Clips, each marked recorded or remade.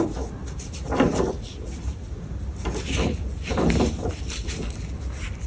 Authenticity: recorded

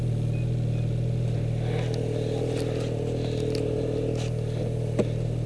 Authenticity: recorded